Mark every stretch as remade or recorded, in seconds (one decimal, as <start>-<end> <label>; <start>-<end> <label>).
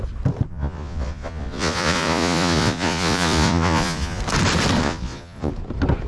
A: 0.0-0.5 recorded; 0.5-4.2 remade; 4.2-4.8 recorded; 4.8-5.5 remade; 5.5-6.1 recorded